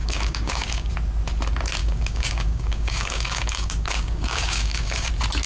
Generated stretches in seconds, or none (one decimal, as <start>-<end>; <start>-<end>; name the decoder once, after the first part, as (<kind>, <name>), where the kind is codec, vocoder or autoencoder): 0.0-0.9 (codec, DAC); 1.8-5.1